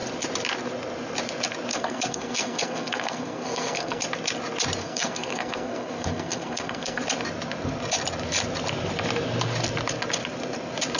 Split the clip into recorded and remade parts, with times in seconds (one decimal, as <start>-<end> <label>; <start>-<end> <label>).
0.0-1.7 recorded; 1.7-4.0 remade; 4.0-4.8 recorded; 4.8-7.0 remade; 7.0-11.0 recorded